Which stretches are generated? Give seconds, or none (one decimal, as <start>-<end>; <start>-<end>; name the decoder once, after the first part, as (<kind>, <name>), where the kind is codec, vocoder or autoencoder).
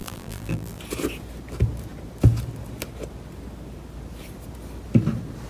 0.0-0.8 (vocoder, BigVGAN v2)